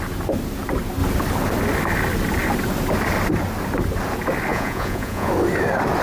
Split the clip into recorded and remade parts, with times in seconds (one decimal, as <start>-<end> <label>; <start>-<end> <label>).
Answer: 0.0-4.5 recorded; 4.5-5.3 remade; 5.3-6.0 recorded